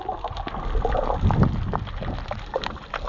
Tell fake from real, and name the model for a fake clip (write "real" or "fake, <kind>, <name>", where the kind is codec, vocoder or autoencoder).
real